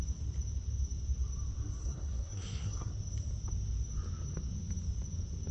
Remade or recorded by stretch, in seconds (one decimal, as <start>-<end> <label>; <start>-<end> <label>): 0.0-1.8 recorded; 1.8-2.9 remade; 2.9-5.5 recorded